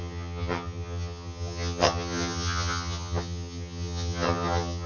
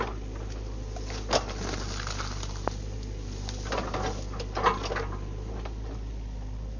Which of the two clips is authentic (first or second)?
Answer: second